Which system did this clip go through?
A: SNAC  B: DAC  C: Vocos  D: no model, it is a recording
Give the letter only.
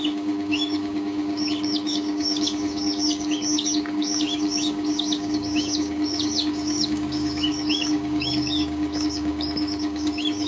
B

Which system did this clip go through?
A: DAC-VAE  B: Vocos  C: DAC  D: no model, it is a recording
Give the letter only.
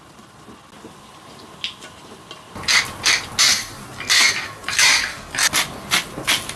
D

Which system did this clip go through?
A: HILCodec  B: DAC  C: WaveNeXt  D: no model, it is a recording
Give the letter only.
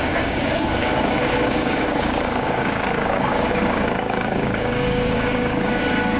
B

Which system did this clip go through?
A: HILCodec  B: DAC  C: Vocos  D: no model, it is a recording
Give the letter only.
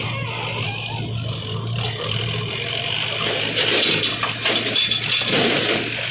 D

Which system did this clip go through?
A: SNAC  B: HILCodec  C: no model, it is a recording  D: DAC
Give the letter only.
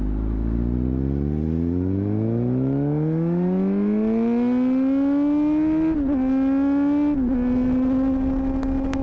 C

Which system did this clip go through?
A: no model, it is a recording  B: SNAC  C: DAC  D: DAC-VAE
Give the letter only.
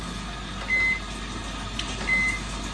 A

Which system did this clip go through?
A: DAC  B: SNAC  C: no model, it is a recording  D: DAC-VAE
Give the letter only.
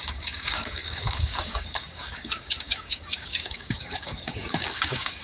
A